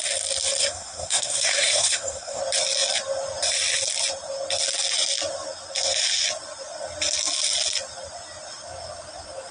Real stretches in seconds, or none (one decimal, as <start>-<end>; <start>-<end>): 0.0-0.6; 2.4-9.5